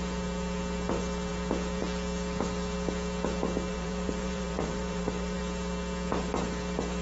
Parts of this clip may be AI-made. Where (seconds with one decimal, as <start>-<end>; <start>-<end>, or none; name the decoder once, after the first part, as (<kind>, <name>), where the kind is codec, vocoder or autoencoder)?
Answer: 3.7-5.4 (vocoder, BigVGAN v2)